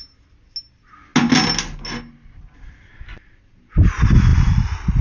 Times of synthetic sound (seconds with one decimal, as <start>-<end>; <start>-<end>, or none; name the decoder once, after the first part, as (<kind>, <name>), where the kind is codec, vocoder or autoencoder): none